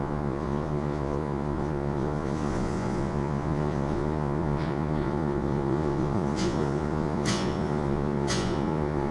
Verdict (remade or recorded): remade